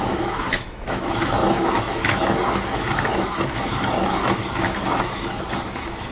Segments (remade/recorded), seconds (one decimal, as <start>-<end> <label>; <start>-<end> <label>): 0.0-6.1 remade